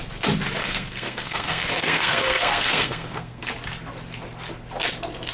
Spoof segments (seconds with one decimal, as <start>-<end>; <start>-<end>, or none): 0.6-3.5